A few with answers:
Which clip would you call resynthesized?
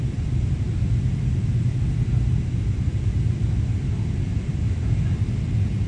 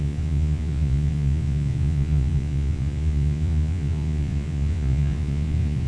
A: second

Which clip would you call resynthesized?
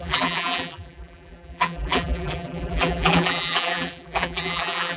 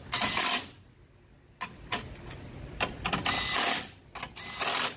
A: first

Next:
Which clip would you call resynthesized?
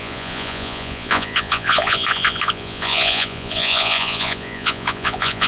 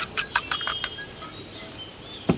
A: first